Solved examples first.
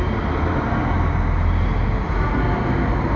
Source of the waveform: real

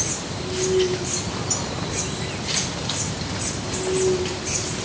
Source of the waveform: real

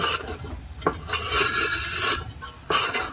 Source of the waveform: real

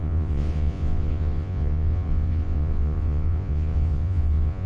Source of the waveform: fake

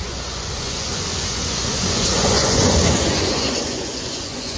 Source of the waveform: fake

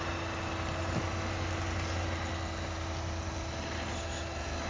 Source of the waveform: real